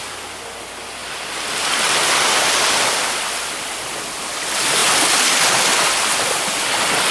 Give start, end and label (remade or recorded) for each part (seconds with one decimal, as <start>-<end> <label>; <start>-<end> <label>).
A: 0.0-7.1 recorded